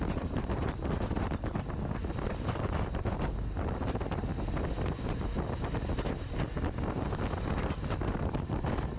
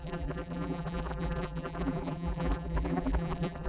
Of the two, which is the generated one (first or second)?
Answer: second